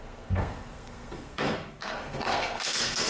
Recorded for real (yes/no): no